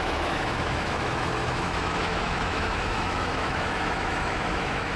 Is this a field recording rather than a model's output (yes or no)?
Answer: no